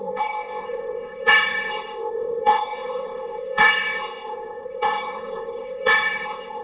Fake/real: fake